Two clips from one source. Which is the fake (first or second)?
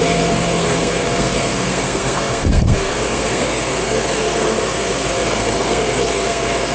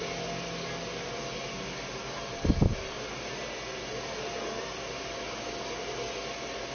first